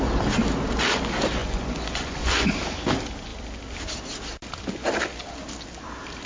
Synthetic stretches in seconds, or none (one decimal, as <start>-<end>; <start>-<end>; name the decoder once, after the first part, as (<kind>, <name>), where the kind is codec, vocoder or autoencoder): 1.4-2.5 (vocoder, Vocos)

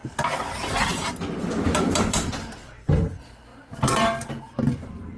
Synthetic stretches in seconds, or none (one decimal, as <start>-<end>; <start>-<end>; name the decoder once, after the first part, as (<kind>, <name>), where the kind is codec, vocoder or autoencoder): none

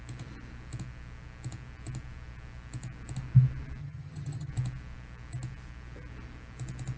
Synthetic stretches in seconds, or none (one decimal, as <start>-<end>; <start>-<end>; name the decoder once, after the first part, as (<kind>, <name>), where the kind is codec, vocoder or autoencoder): 3.8-4.5 (vocoder, HiFi-GAN)

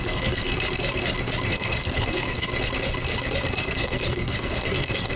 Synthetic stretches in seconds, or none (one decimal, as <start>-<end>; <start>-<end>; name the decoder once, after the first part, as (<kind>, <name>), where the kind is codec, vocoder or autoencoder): 0.0-0.5 (codec, SNAC); 1.5-2.5; 3.6-5.2

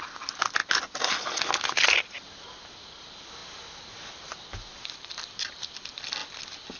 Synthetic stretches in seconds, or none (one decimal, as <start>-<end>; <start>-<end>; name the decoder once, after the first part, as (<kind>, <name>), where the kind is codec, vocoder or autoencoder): none

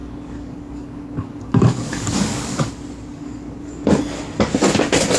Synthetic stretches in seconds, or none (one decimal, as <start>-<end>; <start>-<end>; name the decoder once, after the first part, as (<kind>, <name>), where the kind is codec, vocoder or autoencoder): 0.0-2.7 (codec, DAC); 3.1-4.0

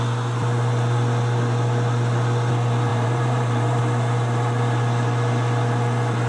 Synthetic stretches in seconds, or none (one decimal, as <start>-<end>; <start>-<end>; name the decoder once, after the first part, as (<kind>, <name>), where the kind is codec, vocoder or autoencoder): 2.9-3.8 (vocoder, BigVGAN v2)

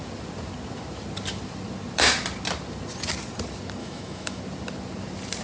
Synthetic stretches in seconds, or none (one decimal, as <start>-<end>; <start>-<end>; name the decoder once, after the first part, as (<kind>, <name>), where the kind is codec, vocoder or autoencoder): 3.8-4.4 (autoencoder, DAC-VAE)